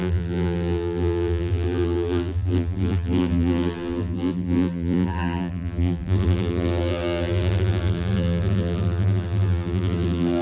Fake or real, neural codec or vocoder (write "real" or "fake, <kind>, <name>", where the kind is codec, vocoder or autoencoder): fake, vocoder, BigVGAN v2